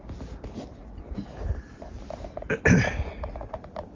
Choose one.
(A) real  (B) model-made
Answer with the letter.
A